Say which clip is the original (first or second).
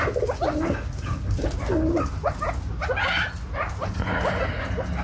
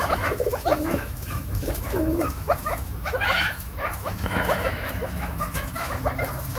first